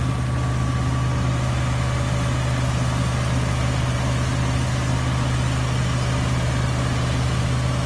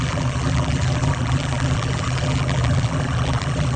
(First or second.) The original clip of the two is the first